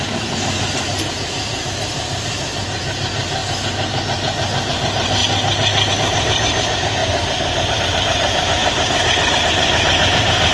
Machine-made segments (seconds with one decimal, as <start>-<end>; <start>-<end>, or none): 0.0-3.4; 4.7-5.2; 5.9-7.0; 7.8-8.6; 9.3-10.5